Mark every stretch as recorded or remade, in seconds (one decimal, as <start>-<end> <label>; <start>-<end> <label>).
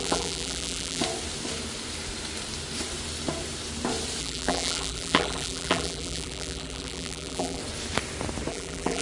0.0-1.0 remade; 1.0-4.2 recorded; 4.2-7.6 remade; 7.6-8.5 recorded; 8.5-9.0 remade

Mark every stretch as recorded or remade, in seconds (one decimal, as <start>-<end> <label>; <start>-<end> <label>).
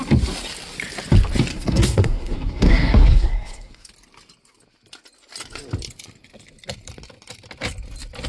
0.0-1.5 recorded; 1.5-3.9 remade; 3.9-8.3 recorded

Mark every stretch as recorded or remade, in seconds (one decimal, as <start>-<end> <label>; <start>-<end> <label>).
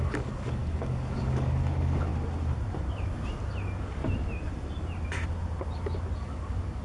0.0-2.1 remade; 2.1-6.2 recorded; 6.2-6.8 remade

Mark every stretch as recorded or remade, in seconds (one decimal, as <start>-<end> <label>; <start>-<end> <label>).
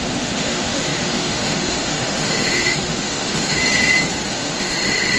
0.0-3.6 remade; 3.6-4.3 recorded; 4.3-5.2 remade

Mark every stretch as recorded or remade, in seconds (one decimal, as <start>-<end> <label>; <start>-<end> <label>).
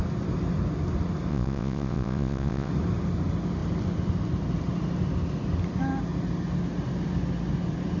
0.0-1.3 recorded; 1.3-2.7 remade; 2.7-8.0 recorded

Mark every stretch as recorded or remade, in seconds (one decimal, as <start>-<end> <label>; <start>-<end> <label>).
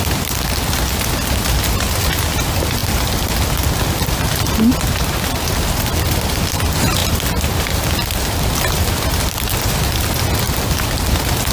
0.0-11.5 recorded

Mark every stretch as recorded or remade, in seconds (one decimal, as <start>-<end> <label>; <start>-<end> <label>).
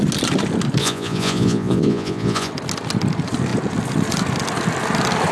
0.0-0.8 recorded; 0.8-2.5 remade; 2.5-5.3 recorded